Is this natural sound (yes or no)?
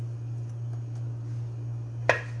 yes